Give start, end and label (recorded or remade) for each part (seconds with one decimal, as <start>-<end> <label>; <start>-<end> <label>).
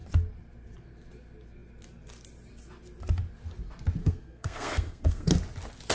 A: 0.0-4.0 recorded; 4.0-5.3 remade; 5.3-5.9 recorded